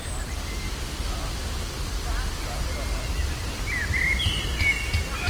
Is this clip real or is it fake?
real